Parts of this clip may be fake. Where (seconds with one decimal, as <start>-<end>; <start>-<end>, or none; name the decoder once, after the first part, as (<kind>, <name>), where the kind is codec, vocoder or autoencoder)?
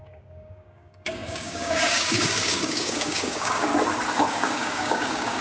0.0-3.7 (codec, DAC); 4.3-5.4